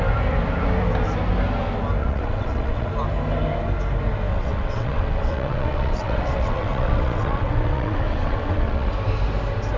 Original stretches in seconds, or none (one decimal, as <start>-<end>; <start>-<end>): 0.0-2.0; 2.9-4.3; 8.9-9.8